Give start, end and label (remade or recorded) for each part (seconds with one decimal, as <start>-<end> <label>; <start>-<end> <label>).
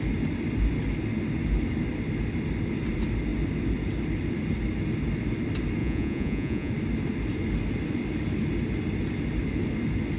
0.0-5.8 recorded; 5.8-6.7 remade; 6.7-10.2 recorded